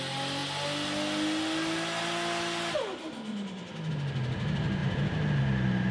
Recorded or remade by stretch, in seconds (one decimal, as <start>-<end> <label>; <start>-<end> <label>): 0.0-5.9 recorded